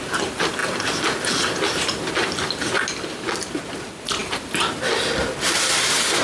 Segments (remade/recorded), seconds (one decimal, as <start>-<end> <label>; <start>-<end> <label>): 0.0-0.6 recorded; 0.6-2.1 remade; 2.1-4.2 recorded; 4.2-4.9 remade; 4.9-6.2 recorded